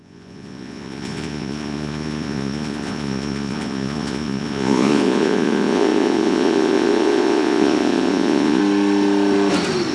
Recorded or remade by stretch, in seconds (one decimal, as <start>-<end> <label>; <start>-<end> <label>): 0.0-8.6 remade; 8.6-9.9 recorded